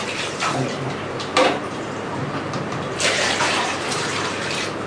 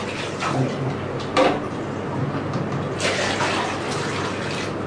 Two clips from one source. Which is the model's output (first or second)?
first